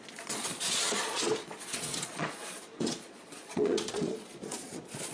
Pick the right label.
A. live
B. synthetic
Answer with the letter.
B